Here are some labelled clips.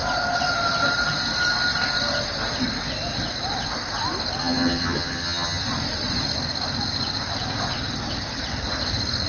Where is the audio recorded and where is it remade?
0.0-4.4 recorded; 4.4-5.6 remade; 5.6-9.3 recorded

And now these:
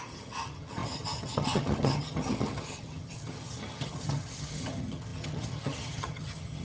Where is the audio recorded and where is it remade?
0.0-6.6 remade

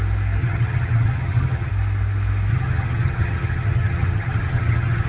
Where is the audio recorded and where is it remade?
0.0-0.4 recorded; 0.4-1.7 remade; 1.7-2.5 recorded; 2.5-5.1 remade